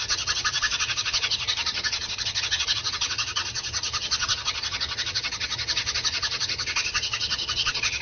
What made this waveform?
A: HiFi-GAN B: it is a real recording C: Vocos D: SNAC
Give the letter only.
A